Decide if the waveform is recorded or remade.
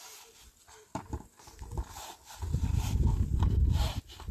recorded